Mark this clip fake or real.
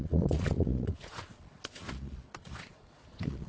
fake